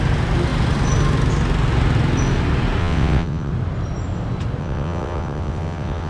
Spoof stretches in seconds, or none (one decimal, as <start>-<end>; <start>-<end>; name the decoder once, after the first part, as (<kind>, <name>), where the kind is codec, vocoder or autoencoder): 2.8-3.5 (vocoder, WaveNeXt); 4.6-6.1